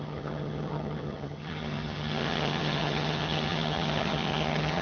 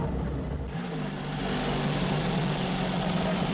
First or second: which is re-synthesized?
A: first